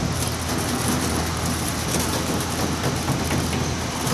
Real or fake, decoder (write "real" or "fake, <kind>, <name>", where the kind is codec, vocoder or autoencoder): real